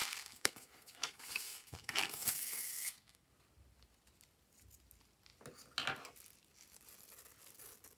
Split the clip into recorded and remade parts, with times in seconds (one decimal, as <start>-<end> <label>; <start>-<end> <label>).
0.0-3.3 remade; 3.3-8.0 recorded